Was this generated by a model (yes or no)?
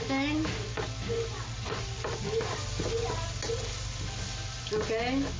no